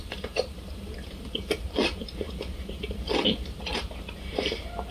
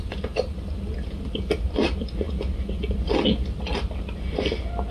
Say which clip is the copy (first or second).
first